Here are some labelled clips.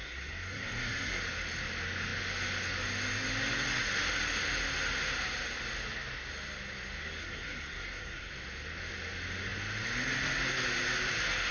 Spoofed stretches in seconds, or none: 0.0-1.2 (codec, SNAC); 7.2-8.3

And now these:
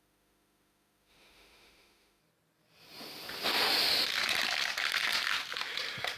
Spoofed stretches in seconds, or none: 0.0-2.2 (autoencoder, DAC-VAE)

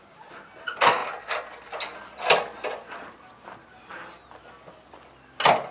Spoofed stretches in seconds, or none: none

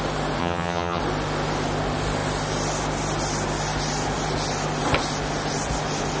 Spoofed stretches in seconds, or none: 0.4-1.0 (vocoder, HiFi-GAN)

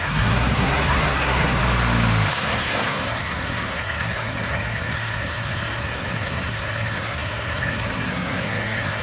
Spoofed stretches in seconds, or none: 0.0-1.6 (codec, SNAC); 2.3-9.0

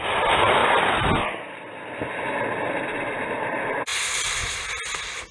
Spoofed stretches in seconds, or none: none

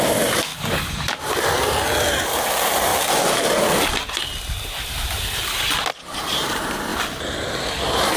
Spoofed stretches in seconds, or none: 0.0-0.5 (vocoder, BigVGAN v2); 2.5-2.9; 6.0-6.9; 7.5-8.2